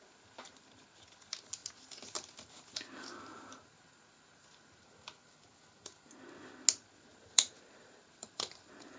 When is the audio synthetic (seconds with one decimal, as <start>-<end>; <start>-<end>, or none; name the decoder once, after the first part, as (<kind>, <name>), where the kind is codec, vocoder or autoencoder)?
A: 3.3-4.8 (vocoder, BigVGAN v2); 7.1-8.5